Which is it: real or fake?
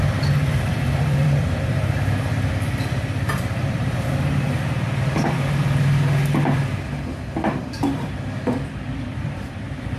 fake